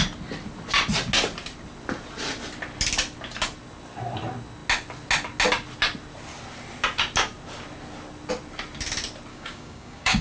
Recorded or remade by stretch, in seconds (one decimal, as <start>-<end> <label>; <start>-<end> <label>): 0.0-9.3 recorded; 9.3-10.2 remade